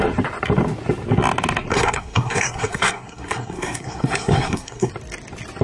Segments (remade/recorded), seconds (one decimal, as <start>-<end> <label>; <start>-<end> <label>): 0.0-1.7 recorded; 1.7-4.9 remade; 4.9-5.6 recorded